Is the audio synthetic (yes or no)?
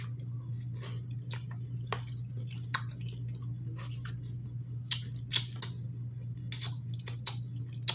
no